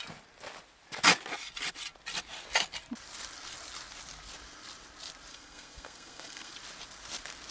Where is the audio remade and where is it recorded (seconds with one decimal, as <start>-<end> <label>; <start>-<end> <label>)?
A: 0.0-5.3 recorded; 5.3-6.5 remade; 6.5-7.5 recorded